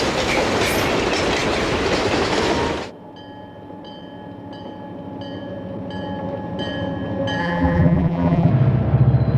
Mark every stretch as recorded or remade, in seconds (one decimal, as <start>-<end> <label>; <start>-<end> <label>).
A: 0.0-7.4 recorded; 7.4-8.5 remade; 8.5-9.4 recorded